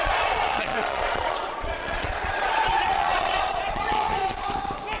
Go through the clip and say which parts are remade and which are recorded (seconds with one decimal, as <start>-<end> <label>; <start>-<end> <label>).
0.0-4.2 remade; 4.2-5.0 recorded

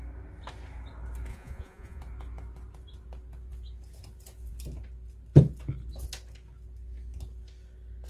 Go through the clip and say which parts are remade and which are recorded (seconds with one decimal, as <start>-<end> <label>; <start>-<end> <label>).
0.0-1.3 recorded; 1.3-2.0 remade; 2.0-8.1 recorded

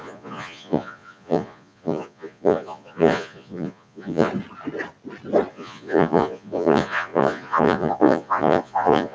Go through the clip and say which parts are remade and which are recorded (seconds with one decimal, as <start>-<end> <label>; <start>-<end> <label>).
0.0-4.3 remade; 4.3-5.5 recorded; 5.5-9.1 remade

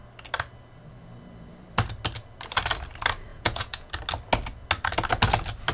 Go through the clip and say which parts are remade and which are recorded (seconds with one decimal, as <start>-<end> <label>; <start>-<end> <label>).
0.0-3.3 recorded; 3.3-3.9 remade; 3.9-5.7 recorded